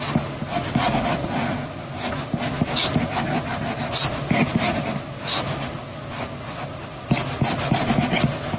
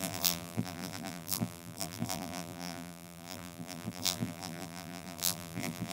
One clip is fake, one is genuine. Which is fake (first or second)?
second